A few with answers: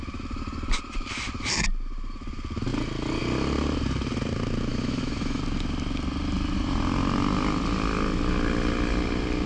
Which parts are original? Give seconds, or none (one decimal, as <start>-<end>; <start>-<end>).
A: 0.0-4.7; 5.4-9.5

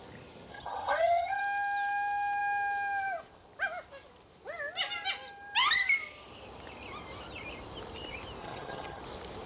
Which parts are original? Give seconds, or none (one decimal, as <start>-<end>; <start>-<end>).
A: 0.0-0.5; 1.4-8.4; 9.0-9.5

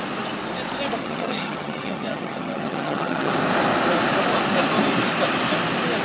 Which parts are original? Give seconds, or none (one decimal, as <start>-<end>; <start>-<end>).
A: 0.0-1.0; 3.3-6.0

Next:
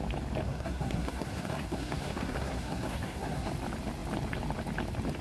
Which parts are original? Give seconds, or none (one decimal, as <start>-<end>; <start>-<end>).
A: 0.0-0.4; 3.5-5.2

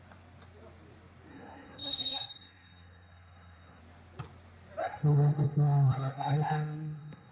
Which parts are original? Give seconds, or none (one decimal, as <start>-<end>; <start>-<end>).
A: 0.0-1.3; 3.8-4.8

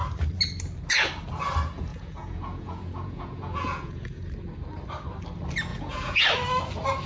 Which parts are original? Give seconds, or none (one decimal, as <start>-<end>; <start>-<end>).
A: 0.0-1.9; 4.3-5.7; 6.2-7.1

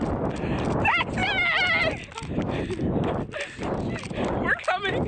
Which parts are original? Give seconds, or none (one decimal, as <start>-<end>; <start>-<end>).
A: 0.0-5.1